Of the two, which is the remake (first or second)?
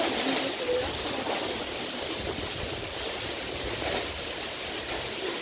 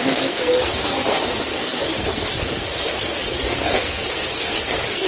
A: second